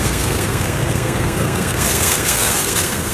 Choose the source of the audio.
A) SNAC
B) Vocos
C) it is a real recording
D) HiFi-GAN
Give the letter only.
A